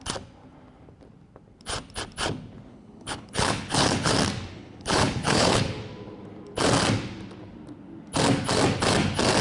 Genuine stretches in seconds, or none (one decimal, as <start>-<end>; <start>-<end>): 0.0-2.7; 4.1-4.5; 5.8-9.4